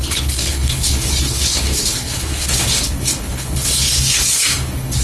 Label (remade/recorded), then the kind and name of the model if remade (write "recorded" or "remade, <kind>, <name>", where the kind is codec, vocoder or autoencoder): remade, codec, HILCodec